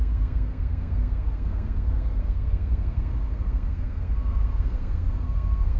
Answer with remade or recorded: remade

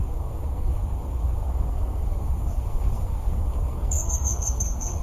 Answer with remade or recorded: remade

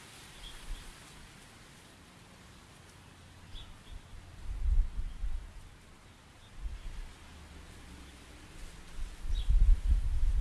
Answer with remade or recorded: recorded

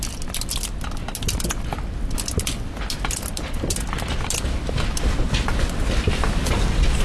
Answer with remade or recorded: recorded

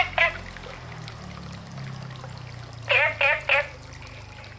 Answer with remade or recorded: recorded